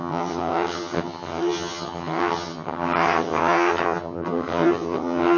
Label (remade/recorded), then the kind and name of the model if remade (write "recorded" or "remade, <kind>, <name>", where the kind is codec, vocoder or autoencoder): remade, vocoder, HiFi-GAN